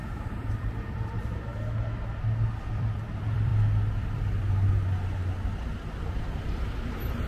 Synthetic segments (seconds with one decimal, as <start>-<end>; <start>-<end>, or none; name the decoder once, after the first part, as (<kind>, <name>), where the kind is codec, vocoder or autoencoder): 0.0-1.5 (vocoder, BigVGAN v2); 2.7-3.5; 6.2-7.3